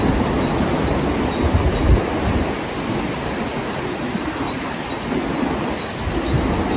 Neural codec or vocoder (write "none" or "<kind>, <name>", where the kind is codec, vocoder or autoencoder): none